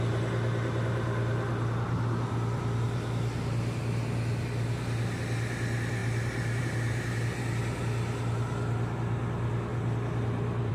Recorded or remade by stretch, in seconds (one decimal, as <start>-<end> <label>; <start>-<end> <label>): 0.0-10.7 recorded